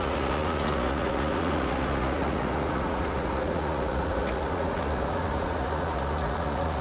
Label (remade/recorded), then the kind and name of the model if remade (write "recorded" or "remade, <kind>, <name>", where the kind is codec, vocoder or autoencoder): remade, vocoder, Vocos